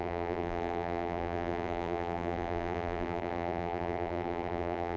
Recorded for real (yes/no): no